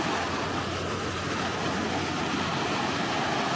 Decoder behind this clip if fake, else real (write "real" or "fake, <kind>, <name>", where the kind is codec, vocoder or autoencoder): real